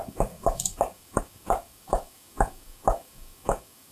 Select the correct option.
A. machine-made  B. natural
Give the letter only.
A